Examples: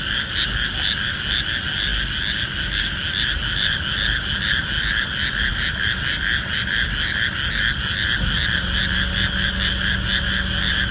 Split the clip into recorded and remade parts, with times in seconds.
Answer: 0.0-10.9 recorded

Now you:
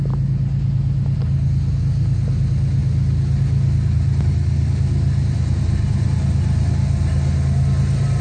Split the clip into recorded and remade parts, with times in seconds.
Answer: 0.0-8.2 recorded

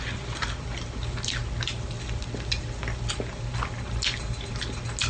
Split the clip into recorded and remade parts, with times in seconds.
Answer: 0.0-5.1 recorded